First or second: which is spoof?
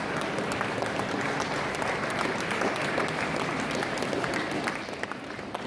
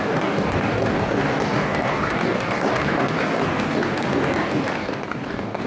second